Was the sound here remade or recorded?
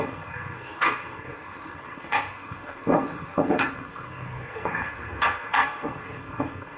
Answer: remade